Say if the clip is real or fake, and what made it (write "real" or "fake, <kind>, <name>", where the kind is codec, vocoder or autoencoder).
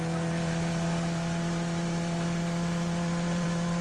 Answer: fake, vocoder, BigVGAN v2